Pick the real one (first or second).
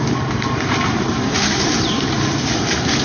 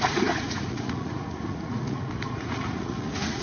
first